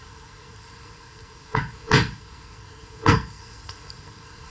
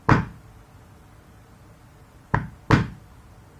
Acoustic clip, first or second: second